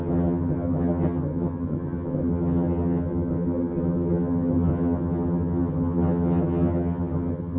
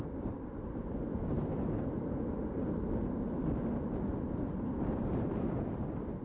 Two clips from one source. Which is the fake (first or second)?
first